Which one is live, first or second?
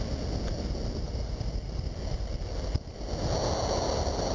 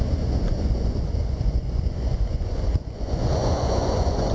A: first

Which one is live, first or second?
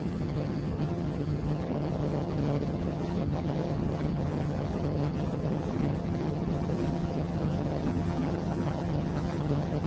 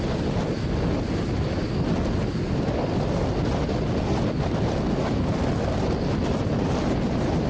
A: second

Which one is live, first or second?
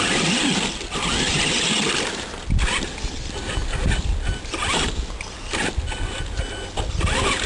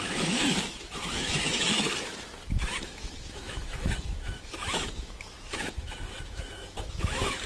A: first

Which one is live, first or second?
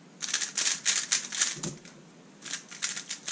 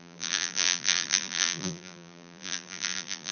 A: first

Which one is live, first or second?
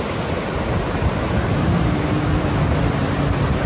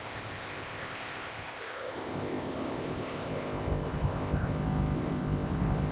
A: first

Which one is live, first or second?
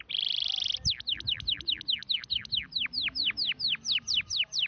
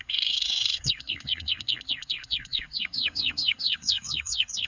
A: first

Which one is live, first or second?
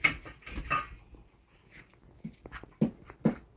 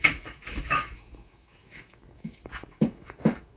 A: first